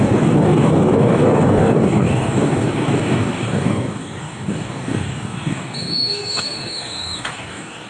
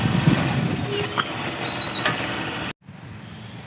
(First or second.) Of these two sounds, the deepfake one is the first